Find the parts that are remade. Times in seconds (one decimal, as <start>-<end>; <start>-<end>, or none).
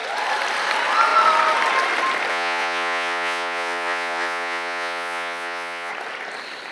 2.3-5.9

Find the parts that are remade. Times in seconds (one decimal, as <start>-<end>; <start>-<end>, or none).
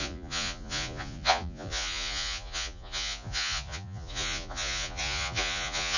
0.0-6.0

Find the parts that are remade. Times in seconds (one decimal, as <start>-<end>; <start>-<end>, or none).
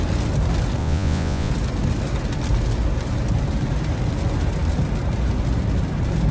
0.8-1.5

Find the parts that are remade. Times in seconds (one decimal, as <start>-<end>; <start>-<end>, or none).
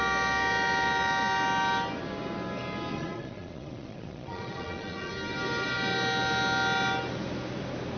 2.9-5.1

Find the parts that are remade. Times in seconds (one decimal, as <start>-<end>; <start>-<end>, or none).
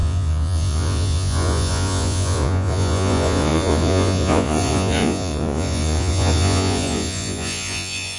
0.0-8.2